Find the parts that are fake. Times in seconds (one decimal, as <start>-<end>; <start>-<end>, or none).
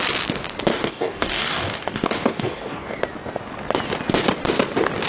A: 0.7-3.0